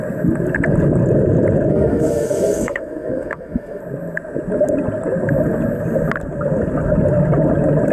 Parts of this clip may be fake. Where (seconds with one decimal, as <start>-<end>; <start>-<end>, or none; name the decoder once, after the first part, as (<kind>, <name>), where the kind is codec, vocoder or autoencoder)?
1.7-3.8 (autoencoder, DAC-VAE)